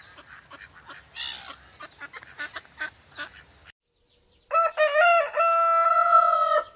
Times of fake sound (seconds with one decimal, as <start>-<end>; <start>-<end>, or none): 5.9-6.8